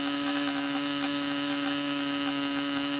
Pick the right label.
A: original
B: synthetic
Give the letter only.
B